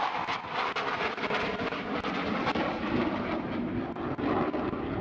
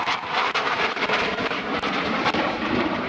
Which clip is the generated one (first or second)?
second